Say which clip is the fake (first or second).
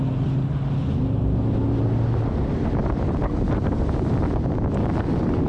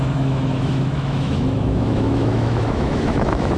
second